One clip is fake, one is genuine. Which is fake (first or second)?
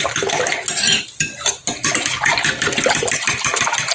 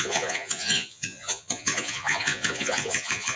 second